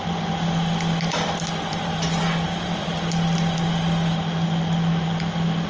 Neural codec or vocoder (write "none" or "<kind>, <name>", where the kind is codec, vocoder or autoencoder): none